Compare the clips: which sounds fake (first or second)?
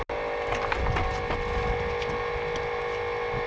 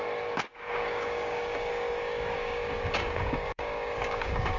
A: second